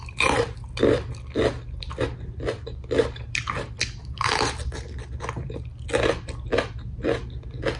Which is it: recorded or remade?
recorded